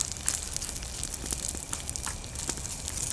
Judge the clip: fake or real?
real